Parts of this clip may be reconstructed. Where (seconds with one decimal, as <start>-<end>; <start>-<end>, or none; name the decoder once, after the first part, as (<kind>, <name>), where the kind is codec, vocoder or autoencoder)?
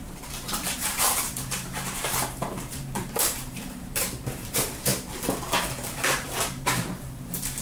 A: 0.0-4.9 (vocoder, BigVGAN v2); 5.6-7.6